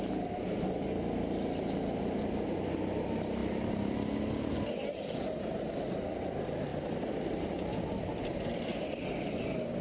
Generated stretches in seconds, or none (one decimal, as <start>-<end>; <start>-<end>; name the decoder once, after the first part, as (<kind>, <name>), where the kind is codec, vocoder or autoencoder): none